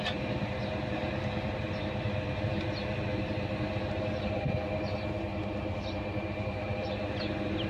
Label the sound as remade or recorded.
remade